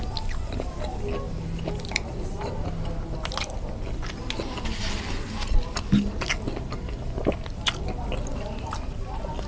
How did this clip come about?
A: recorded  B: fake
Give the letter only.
A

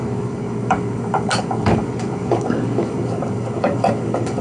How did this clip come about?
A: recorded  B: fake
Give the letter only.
B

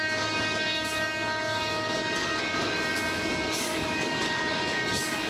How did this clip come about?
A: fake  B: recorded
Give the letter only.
A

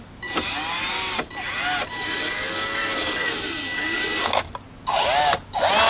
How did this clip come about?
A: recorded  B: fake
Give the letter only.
A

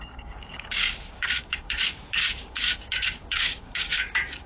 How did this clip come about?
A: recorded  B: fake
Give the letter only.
B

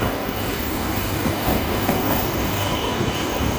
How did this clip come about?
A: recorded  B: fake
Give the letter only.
B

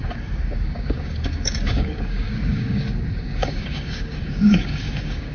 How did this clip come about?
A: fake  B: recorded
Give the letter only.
A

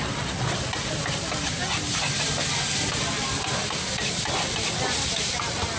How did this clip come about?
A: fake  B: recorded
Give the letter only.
B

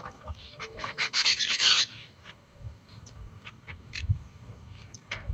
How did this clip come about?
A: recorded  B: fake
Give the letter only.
B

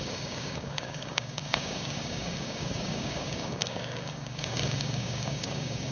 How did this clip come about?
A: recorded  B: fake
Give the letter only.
B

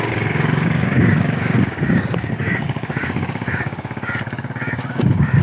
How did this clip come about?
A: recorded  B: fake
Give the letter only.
B